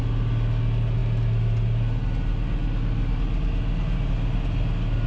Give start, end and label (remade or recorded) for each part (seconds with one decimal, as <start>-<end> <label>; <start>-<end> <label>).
0.0-5.1 recorded